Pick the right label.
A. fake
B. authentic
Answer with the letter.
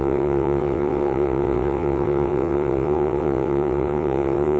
A